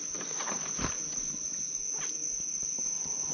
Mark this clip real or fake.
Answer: real